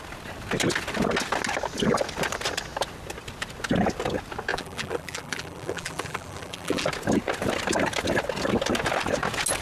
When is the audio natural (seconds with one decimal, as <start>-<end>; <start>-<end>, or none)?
0.0-4.5; 6.9-9.6